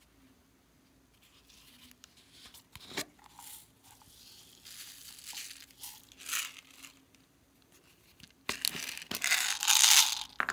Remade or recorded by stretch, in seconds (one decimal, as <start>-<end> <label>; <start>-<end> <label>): 0.0-10.5 recorded